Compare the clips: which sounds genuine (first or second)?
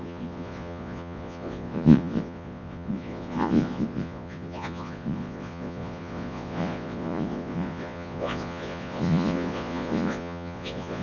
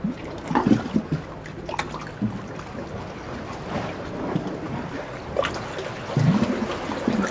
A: second